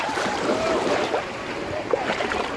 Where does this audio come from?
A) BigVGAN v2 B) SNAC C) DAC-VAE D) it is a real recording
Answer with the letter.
A